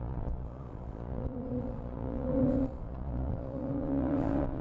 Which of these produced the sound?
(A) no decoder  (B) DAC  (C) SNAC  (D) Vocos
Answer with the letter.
D